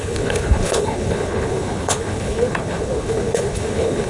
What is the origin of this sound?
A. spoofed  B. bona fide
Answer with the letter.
A